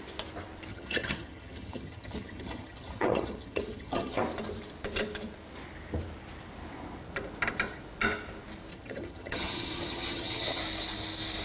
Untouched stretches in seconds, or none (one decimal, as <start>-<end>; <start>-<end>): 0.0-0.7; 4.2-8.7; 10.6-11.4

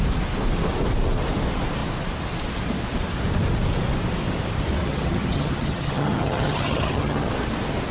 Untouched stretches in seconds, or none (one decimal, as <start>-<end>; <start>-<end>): 0.0-4.8; 7.3-7.9

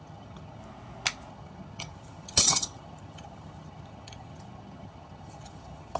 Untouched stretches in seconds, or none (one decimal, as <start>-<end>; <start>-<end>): 0.6-1.3

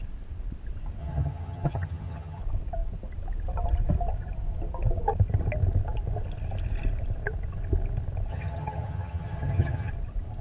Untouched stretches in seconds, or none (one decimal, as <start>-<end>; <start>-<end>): 0.0-1.0; 2.4-8.3; 9.9-10.4

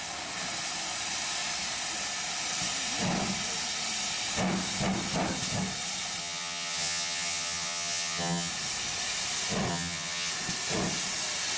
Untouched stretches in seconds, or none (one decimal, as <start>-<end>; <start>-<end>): 0.0-6.2; 8.5-9.7; 10.3-11.6